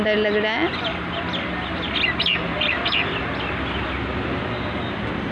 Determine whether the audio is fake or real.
real